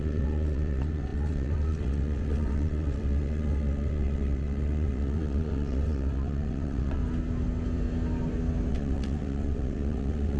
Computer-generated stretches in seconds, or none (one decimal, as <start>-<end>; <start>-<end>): 0.0-7.0; 8.7-10.4